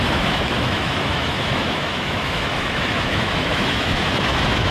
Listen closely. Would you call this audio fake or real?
fake